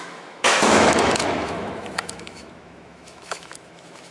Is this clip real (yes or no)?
no